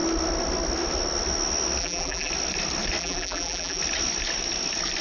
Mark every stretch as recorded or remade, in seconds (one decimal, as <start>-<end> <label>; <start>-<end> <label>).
0.0-1.8 recorded; 1.8-2.3 remade; 2.3-3.0 recorded; 3.0-3.8 remade; 3.8-5.0 recorded